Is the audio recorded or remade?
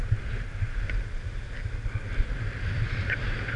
recorded